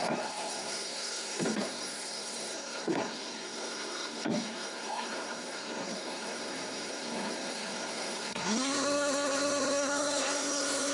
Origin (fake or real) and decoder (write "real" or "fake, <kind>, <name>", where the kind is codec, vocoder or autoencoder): fake, codec, SNAC